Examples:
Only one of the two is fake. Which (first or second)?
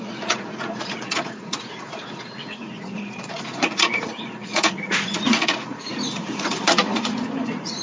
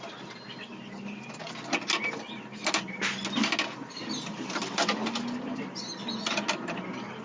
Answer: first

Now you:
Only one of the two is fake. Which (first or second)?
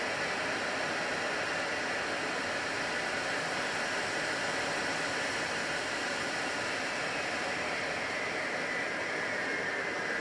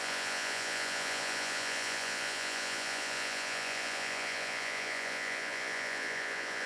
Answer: second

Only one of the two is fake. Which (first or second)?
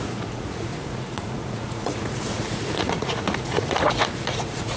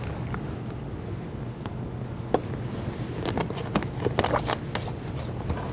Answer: first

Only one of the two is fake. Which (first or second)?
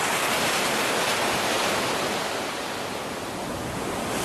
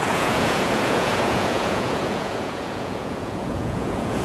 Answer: second